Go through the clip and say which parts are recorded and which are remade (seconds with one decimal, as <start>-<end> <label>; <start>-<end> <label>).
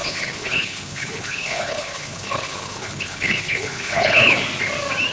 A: 0.0-4.4 remade; 4.4-5.1 recorded